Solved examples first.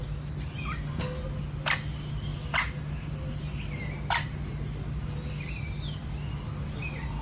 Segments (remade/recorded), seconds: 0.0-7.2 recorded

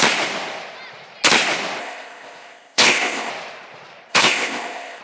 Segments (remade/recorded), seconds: 0.0-1.8 recorded; 1.8-3.3 remade; 3.3-4.1 recorded; 4.1-5.0 remade

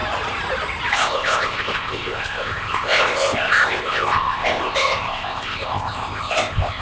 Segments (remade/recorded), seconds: 0.0-0.9 recorded; 0.9-6.8 remade

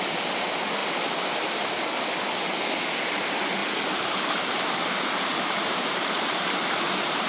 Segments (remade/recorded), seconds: 0.0-0.8 recorded; 0.8-1.7 remade; 1.7-3.6 recorded; 3.6-7.3 remade

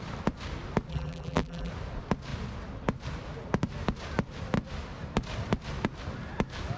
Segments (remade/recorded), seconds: 0.0-0.9 recorded; 0.9-1.7 remade; 1.7-6.8 recorded

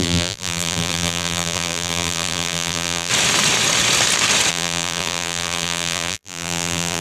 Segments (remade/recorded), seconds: 0.0-3.1 remade; 3.1-4.5 recorded; 4.5-7.0 remade